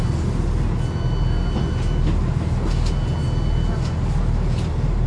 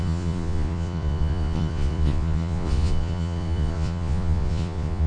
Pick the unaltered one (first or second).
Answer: first